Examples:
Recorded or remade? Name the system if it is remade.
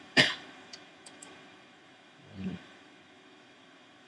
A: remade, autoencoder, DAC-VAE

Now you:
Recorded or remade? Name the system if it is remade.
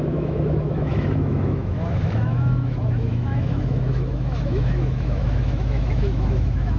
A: remade, autoencoder, DAC-VAE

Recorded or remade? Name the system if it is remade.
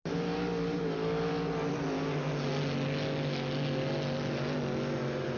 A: recorded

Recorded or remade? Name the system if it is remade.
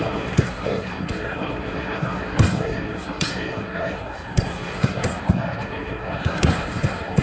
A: remade, codec, SNAC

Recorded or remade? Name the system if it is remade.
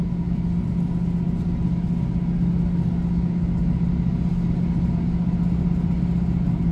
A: recorded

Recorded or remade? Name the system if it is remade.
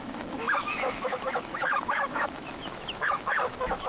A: remade, autoencoder, DAC-VAE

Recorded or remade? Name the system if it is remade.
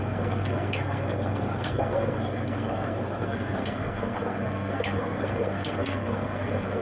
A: remade, codec, SNAC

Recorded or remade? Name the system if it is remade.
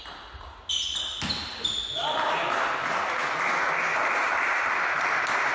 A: recorded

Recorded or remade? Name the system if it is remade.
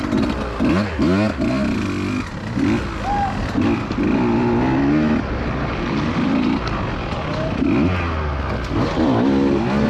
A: recorded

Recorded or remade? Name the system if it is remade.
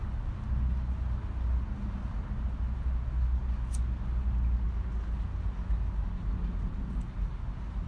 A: recorded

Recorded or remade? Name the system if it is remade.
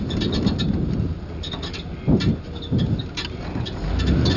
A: recorded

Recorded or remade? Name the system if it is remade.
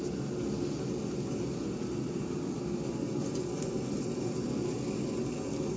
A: recorded